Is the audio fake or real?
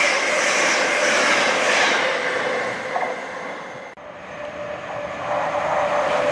real